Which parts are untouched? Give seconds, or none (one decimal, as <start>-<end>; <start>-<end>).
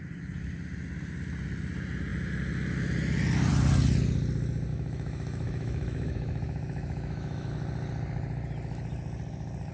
0.0-4.7; 7.5-9.7